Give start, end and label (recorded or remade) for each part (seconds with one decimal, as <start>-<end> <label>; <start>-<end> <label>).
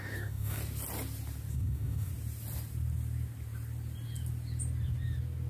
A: 0.0-0.6 remade; 0.6-1.5 recorded; 1.5-2.1 remade; 2.1-5.5 recorded